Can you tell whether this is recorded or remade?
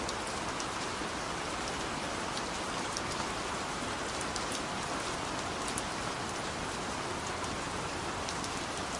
recorded